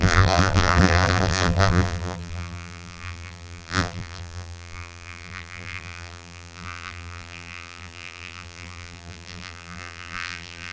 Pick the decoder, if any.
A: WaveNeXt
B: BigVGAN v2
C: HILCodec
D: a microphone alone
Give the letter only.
B